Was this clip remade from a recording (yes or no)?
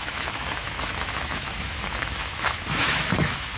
yes